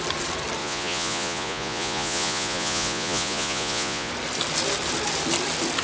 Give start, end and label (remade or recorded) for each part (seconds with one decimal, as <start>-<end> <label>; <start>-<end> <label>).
0.0-0.6 recorded; 0.6-4.1 remade; 4.1-5.8 recorded